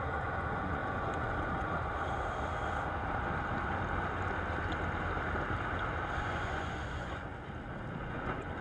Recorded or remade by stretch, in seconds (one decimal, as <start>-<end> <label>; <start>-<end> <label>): 0.0-1.9 remade; 1.9-6.2 recorded; 6.2-7.3 remade; 7.3-8.0 recorded; 8.0-8.6 remade